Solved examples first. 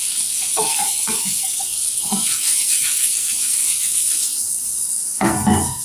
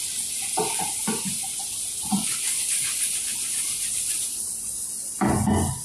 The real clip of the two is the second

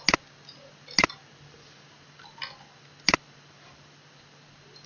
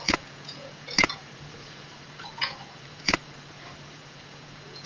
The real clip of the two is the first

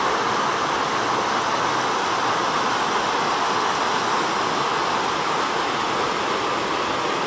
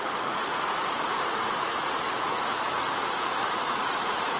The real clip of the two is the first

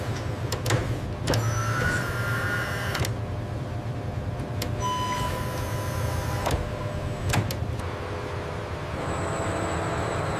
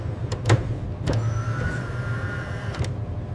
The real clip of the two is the first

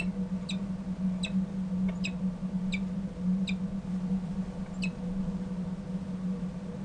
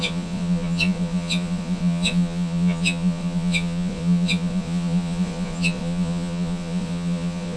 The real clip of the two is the first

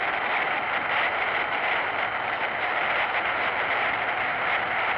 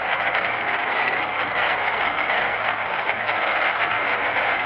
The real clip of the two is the first